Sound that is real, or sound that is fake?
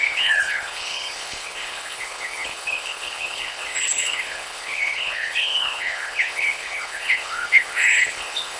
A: fake